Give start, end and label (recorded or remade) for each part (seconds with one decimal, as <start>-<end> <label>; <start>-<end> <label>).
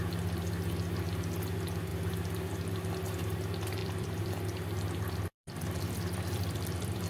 0.0-3.8 recorded; 3.8-7.1 remade